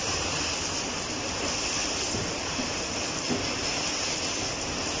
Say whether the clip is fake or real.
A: real